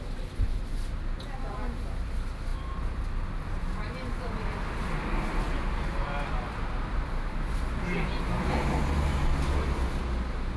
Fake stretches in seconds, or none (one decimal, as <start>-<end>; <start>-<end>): none